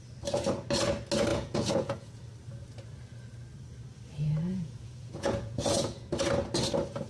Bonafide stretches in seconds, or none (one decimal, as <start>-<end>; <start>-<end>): 0.0-1.3; 2.2-4.5; 6.1-7.1